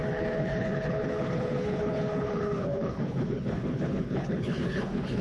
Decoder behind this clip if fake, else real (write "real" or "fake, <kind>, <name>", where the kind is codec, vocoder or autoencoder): fake, codec, HILCodec